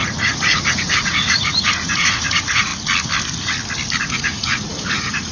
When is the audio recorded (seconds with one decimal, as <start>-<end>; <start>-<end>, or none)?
2.7-4.0